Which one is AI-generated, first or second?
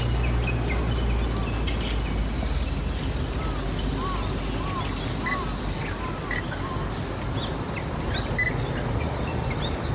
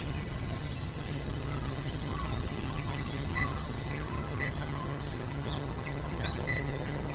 second